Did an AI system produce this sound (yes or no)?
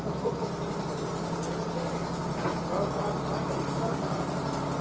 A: no